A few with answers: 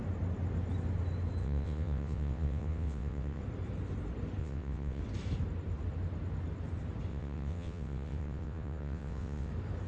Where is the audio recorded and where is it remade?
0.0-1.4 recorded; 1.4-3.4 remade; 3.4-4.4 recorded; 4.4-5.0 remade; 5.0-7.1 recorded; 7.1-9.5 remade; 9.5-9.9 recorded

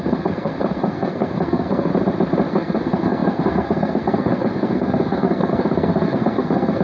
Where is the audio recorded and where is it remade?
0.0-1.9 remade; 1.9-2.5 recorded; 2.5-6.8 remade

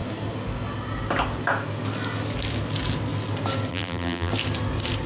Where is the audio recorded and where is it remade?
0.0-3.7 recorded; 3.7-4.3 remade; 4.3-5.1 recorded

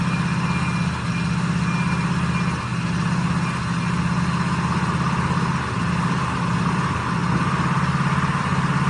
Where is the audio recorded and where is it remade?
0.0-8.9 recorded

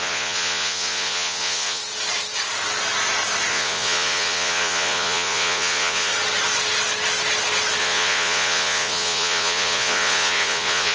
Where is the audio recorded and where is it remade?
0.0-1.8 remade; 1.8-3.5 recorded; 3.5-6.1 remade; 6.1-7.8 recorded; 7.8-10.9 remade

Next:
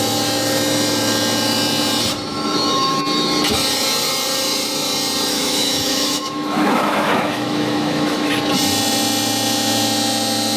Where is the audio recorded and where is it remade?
0.0-2.3 recorded; 2.3-3.0 remade; 3.0-5.3 recorded; 5.3-8.3 remade; 8.3-10.6 recorded

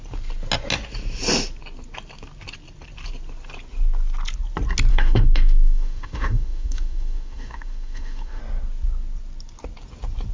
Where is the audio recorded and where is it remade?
0.0-4.9 recorded; 4.9-8.4 remade; 8.4-10.3 recorded